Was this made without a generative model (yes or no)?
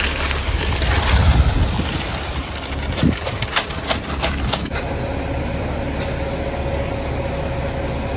yes